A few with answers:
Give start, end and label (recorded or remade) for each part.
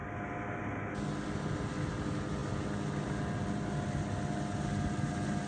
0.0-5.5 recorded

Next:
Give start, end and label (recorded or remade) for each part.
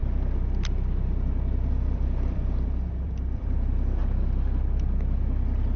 0.0-1.7 recorded; 1.7-4.0 remade; 4.0-5.8 recorded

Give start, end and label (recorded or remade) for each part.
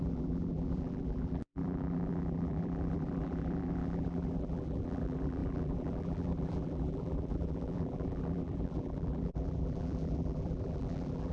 0.0-11.3 remade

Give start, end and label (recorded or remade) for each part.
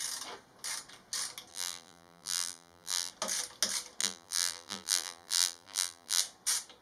0.0-1.5 recorded; 1.5-3.1 remade; 3.1-4.0 recorded; 4.0-6.2 remade; 6.2-6.8 recorded